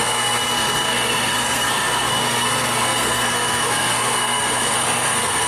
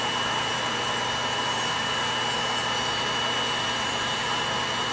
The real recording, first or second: second